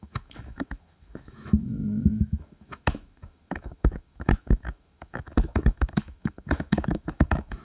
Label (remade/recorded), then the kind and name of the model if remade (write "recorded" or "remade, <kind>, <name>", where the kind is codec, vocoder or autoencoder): remade, autoencoder, DAC-VAE